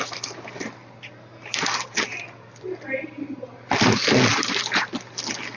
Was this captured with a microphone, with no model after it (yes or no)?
yes